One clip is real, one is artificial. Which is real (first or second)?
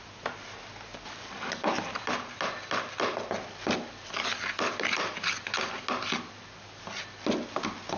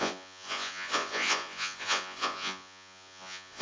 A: first